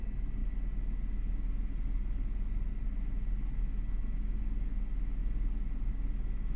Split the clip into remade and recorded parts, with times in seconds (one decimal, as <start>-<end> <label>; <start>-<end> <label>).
0.0-6.6 recorded